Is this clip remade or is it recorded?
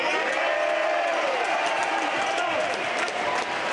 remade